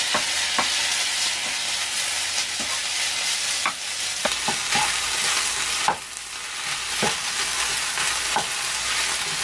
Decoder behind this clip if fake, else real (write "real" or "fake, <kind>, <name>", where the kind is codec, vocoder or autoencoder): real